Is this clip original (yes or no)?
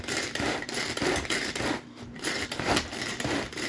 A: no